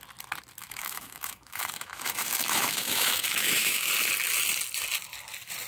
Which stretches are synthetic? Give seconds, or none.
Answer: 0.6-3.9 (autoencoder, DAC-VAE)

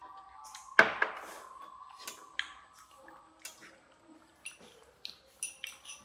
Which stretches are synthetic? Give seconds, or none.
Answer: none

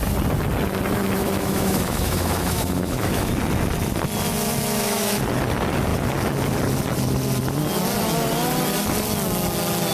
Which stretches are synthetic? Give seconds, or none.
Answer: 1.2-3.3 (autoencoder, DAC-VAE); 4.3-5.2

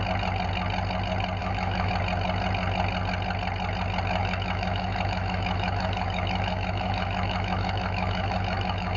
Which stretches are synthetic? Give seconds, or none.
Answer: 1.4-1.9 (autoencoder, DAC-VAE); 4.2-9.0

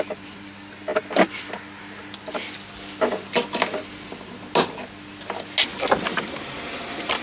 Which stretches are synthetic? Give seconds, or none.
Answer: none